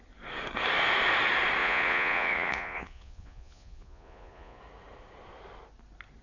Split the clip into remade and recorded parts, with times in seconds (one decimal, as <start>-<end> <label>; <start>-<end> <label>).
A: 0.0-1.6 recorded; 1.6-4.6 remade; 4.6-6.2 recorded